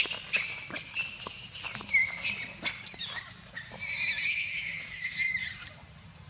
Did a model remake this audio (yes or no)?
no